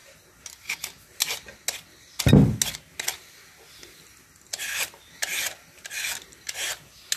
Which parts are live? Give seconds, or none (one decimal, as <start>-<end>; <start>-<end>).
0.0-7.2

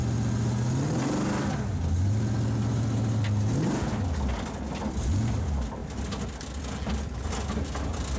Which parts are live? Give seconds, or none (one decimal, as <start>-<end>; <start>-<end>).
0.0-8.2

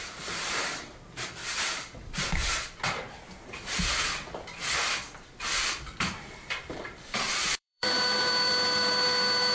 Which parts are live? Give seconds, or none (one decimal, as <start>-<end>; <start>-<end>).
1.4-6.0